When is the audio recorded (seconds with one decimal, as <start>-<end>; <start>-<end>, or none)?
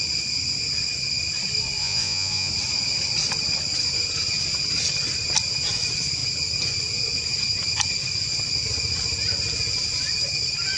0.0-1.8; 2.5-10.8